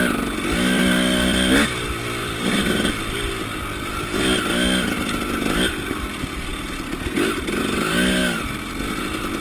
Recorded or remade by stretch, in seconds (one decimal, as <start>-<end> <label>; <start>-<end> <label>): 0.0-2.2 recorded; 2.2-2.9 remade; 2.9-9.4 recorded